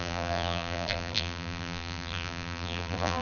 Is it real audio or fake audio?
fake